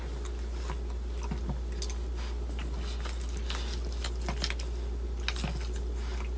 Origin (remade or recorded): recorded